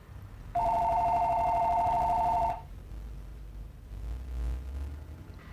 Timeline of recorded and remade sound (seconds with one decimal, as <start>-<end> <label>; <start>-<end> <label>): 0.0-0.6 recorded; 0.6-2.9 remade; 2.9-3.3 recorded; 3.3-3.9 remade; 3.9-5.5 recorded